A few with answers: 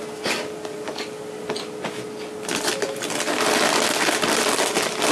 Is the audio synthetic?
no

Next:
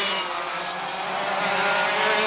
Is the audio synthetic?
no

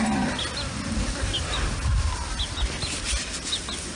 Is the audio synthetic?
no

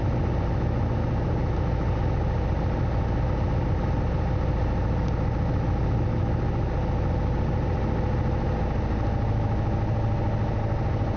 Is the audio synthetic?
no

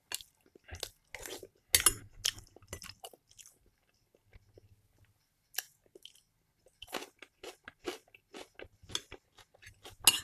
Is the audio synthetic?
no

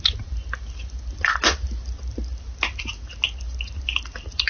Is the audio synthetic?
no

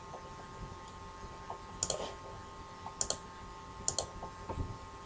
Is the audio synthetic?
no